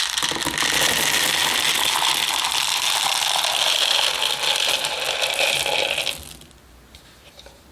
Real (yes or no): yes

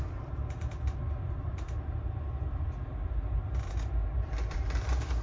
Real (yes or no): no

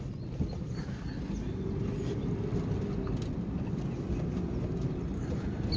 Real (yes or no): yes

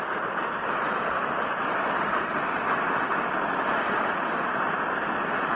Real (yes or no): yes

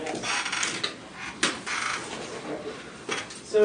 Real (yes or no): yes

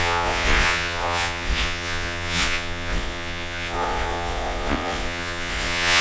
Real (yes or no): no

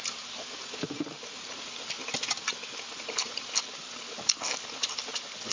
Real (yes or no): yes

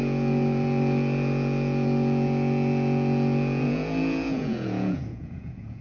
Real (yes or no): no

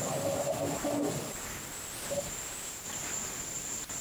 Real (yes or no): yes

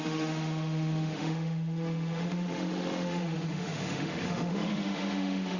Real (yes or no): no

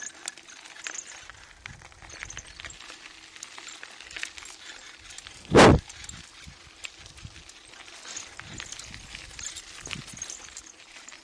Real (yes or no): yes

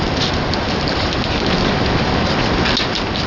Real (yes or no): yes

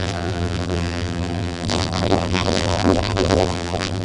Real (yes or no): no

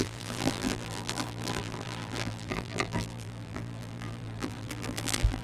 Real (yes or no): no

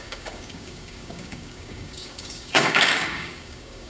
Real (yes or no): no